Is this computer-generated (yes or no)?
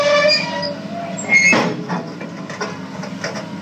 no